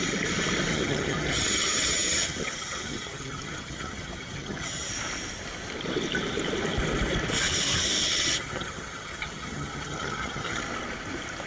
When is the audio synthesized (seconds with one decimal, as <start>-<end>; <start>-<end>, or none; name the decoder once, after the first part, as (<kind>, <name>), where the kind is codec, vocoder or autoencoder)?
0.7-4.9 (vocoder, HiFi-GAN); 8.0-10.6